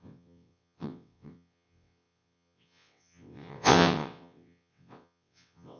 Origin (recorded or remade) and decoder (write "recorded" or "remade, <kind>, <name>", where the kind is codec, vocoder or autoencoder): remade, vocoder, WaveNeXt